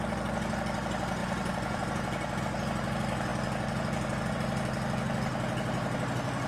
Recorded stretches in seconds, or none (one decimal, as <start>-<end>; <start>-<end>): 0.0-1.2; 2.4-6.5